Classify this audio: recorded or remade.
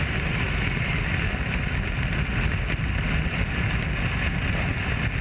recorded